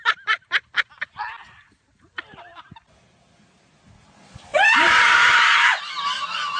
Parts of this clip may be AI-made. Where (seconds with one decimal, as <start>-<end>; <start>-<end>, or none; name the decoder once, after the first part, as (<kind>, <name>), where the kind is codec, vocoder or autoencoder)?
4.5-5.8 (vocoder, BigVGAN v2)